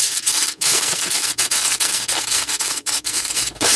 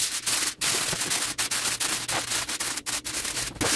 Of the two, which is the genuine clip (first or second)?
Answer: second